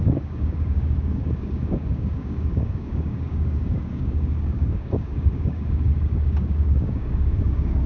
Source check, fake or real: fake